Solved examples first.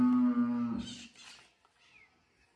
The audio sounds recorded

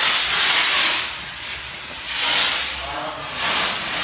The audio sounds recorded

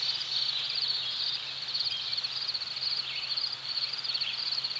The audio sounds recorded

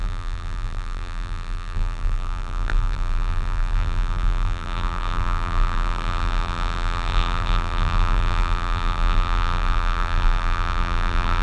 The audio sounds remade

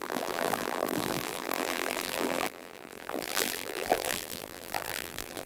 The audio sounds remade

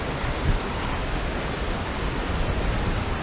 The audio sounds recorded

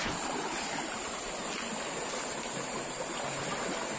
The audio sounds recorded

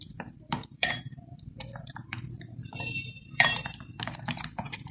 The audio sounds remade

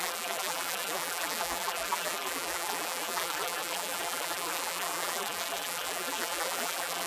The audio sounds remade